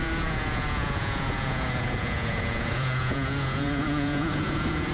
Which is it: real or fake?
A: fake